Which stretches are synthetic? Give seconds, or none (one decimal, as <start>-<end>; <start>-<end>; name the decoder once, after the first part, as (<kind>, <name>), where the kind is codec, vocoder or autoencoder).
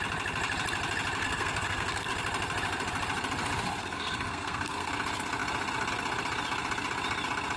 1.2-2.1 (codec, SNAC); 3.8-4.9